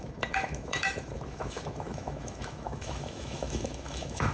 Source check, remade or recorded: remade